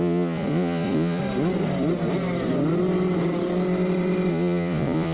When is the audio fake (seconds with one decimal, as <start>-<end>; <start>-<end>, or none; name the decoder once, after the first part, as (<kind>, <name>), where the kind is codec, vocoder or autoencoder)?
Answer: 0.0-1.2 (vocoder, Vocos); 4.3-5.1